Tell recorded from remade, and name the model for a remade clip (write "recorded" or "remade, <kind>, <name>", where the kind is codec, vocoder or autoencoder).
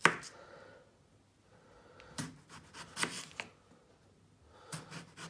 recorded